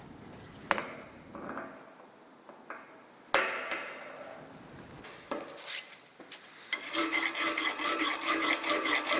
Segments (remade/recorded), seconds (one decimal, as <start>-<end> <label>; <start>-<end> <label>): 0.0-9.2 recorded

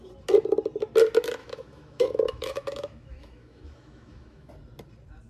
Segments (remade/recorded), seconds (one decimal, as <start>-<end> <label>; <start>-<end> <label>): 0.0-1.4 recorded; 1.4-4.5 remade; 4.5-5.3 recorded